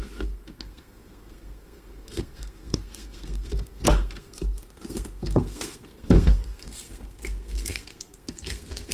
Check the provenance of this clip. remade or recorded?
remade